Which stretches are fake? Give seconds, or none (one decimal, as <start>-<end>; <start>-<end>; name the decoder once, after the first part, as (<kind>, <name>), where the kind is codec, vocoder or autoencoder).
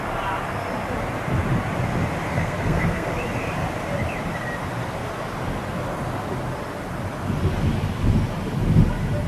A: 2.3-3.1 (codec, SNAC)